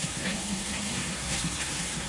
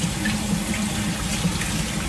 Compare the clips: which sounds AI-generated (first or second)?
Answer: first